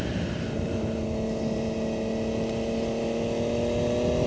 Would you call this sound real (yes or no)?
yes